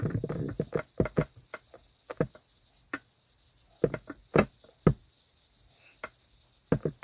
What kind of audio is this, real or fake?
real